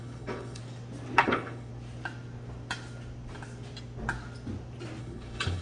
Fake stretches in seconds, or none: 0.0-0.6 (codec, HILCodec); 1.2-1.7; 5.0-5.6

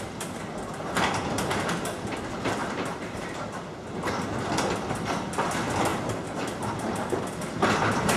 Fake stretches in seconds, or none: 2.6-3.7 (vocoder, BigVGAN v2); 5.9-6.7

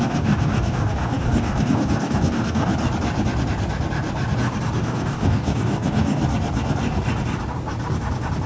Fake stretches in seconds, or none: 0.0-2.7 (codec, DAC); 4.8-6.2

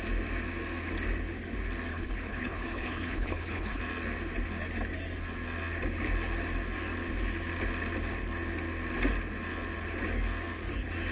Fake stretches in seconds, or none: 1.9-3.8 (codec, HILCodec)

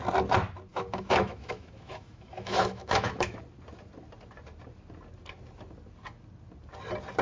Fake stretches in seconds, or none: 0.7-3.4 (autoencoder, DAC-VAE)

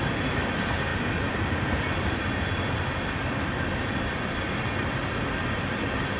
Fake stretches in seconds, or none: none

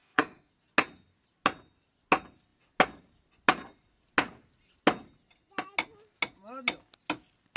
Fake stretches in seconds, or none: 0.0-0.5 (autoencoder, DAC-VAE)

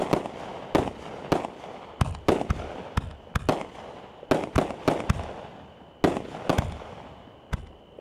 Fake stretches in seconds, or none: none